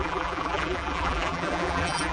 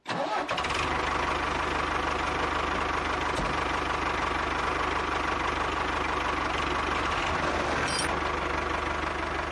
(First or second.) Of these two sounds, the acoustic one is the second